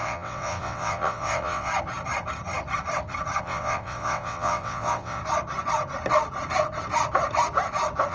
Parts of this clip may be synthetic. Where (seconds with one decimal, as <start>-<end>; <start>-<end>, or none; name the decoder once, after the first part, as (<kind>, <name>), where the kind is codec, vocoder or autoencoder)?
0.0-1.7 (vocoder, WaveNeXt); 3.4-5.2